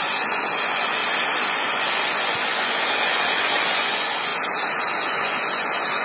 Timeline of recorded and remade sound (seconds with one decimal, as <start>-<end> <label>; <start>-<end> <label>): 0.0-1.0 remade; 1.0-1.5 recorded; 1.5-4.3 remade; 4.3-4.8 recorded; 4.8-6.0 remade